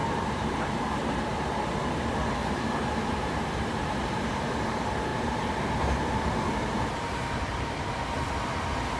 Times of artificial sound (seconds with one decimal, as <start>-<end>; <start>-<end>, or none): 0.0-0.9; 2.4-4.4; 5.1-7.9